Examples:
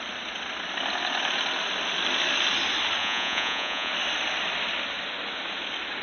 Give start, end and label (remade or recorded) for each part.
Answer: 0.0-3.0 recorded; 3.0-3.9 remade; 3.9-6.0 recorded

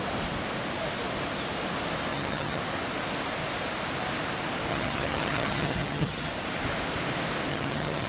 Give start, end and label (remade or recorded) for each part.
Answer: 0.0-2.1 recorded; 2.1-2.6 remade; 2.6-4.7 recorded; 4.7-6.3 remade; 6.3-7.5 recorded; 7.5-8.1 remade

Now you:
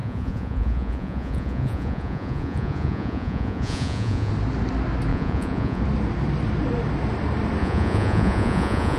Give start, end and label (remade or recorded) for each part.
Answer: 0.0-4.3 remade; 4.3-5.1 recorded; 5.1-5.8 remade; 5.8-7.6 recorded; 7.6-9.0 remade